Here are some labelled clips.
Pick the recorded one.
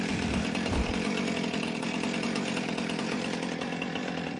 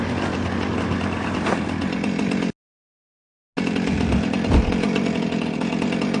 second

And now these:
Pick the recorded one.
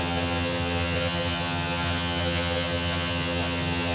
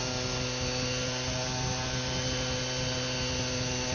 second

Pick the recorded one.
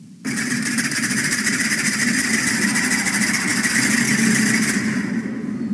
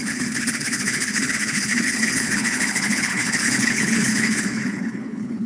first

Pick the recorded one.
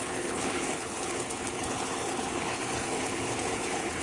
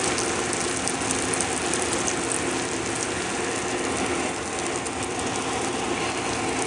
second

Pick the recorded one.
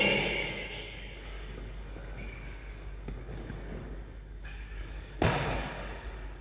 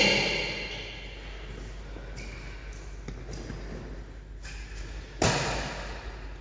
second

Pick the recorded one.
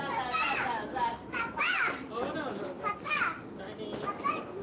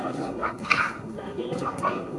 first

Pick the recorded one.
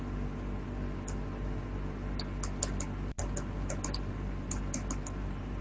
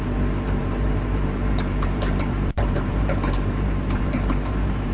first